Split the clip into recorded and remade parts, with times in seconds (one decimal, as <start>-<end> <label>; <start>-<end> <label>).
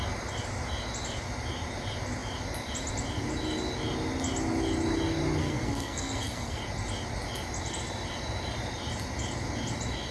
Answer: 0.0-5.4 recorded; 5.4-6.6 remade; 6.6-10.1 recorded